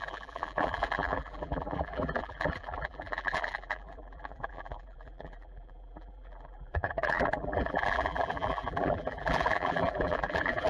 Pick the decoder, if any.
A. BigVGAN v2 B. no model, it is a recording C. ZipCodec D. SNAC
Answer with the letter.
A